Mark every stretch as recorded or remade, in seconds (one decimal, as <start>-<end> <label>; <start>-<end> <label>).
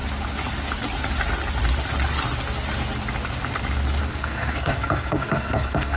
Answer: 0.0-4.0 recorded; 4.0-6.0 remade